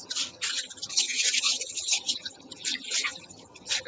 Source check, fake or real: fake